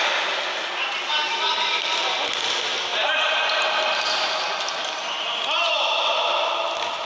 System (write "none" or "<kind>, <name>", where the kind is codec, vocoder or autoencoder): none